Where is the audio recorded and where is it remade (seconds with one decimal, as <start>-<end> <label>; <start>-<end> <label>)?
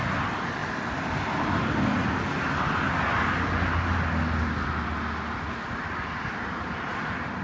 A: 0.0-7.4 recorded